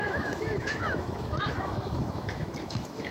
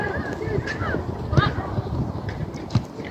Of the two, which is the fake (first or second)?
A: first